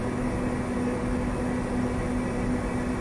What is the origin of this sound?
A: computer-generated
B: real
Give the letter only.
B